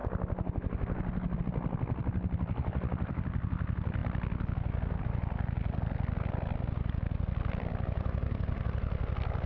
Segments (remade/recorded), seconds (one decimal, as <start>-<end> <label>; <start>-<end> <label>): 0.0-1.4 recorded; 1.4-4.0 remade; 4.0-5.0 recorded; 5.0-9.5 remade